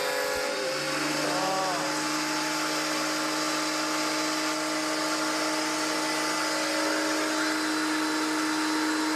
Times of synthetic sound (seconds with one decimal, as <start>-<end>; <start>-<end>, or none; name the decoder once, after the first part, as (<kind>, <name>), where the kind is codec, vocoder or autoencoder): none